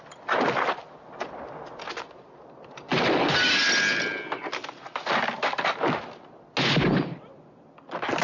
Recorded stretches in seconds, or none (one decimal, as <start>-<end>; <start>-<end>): 0.0-8.2